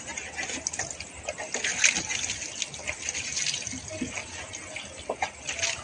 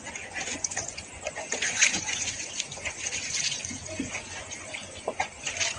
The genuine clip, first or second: first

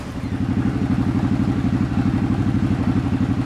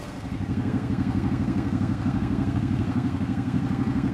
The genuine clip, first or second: first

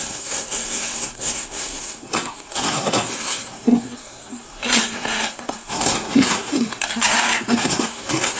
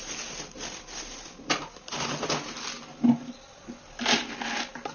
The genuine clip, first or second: second